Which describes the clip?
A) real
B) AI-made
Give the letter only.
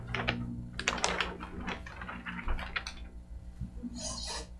A